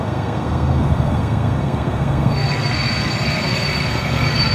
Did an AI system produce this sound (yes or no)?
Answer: yes